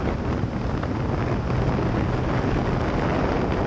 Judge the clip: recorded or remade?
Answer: recorded